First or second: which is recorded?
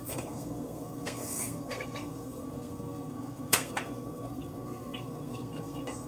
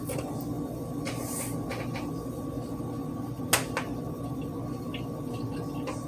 second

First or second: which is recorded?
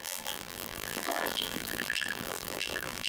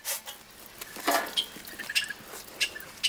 second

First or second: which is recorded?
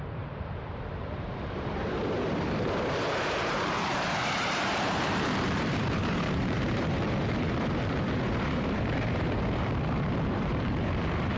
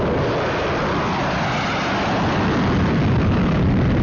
second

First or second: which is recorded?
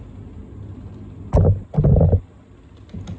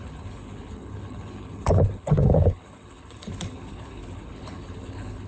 first